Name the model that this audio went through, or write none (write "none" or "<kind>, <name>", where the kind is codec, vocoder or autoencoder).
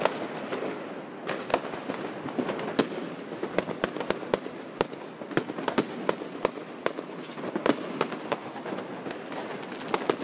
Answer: none